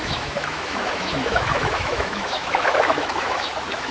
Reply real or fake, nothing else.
fake